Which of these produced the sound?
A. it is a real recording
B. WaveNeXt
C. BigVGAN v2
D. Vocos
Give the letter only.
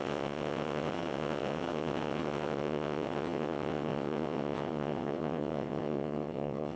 B